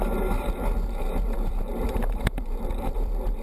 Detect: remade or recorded remade